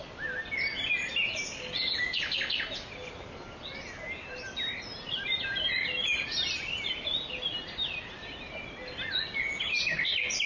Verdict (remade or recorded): recorded